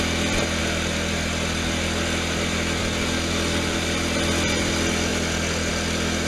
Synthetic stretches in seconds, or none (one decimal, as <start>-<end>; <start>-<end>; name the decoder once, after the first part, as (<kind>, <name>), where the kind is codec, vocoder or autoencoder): none